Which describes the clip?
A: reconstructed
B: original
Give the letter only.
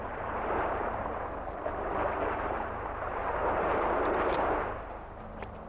A